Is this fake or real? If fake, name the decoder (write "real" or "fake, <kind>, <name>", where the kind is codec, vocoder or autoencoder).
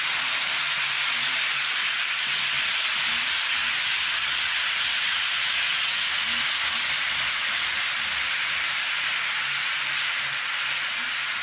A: real